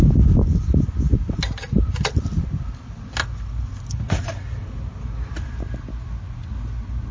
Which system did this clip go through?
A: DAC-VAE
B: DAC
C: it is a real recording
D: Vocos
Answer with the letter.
C